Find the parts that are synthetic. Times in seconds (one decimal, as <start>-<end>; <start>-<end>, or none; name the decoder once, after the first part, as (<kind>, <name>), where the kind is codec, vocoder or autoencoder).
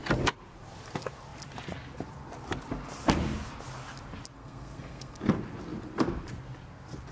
4.4-5.2 (codec, SNAC)